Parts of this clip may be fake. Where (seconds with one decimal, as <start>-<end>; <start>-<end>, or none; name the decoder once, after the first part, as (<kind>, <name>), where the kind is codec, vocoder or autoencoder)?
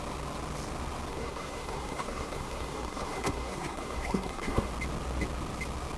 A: 1.1-4.7 (codec, SNAC)